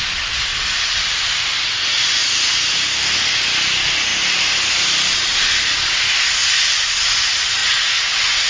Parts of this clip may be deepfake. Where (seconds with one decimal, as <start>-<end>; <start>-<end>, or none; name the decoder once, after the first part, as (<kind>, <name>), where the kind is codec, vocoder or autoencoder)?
none